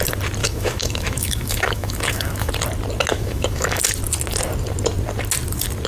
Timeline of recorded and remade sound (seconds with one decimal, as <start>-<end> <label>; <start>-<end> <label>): 0.0-0.4 recorded; 0.4-2.5 remade; 2.5-3.1 recorded; 3.1-3.8 remade; 3.8-5.9 recorded